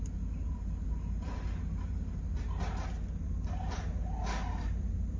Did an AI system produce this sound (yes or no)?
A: no